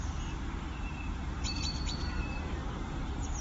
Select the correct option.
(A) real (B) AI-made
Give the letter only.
B